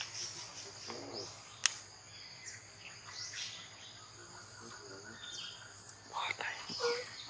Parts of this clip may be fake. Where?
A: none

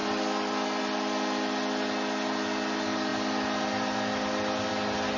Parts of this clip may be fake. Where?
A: none

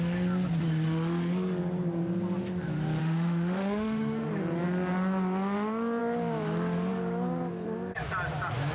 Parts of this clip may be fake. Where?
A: 3.0-4.3 (autoencoder, DAC-VAE)